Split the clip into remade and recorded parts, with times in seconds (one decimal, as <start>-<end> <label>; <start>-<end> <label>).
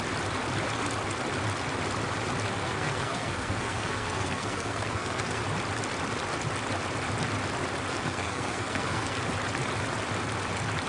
0.0-2.6 recorded; 2.6-5.4 remade; 5.4-7.9 recorded; 7.9-9.2 remade; 9.2-10.9 recorded